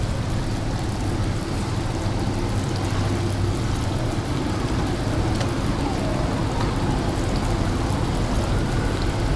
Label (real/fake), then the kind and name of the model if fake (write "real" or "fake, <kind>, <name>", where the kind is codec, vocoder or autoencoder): real